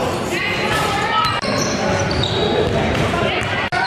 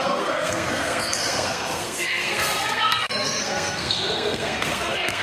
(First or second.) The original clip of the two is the first